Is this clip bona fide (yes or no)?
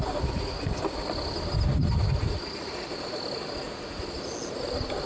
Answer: yes